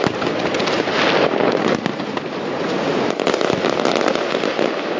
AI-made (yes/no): no